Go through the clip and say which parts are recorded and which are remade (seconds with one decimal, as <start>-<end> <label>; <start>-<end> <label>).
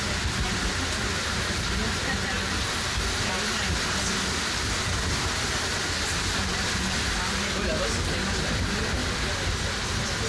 0.0-10.3 recorded